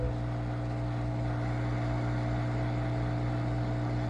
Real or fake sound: real